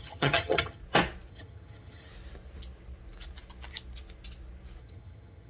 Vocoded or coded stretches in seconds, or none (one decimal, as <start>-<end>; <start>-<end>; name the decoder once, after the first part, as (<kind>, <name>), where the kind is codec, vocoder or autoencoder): 0.0-0.8 (vocoder, HiFi-GAN); 1.3-2.1; 4.8-5.5